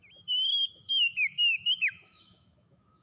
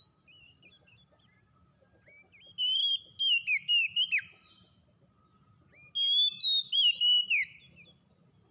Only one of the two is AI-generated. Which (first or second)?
first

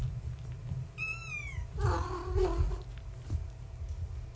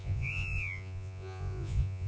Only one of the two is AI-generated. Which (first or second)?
second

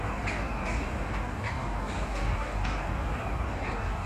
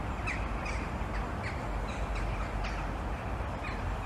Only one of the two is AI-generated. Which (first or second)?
first